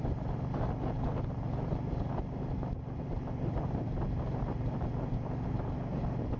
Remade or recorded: recorded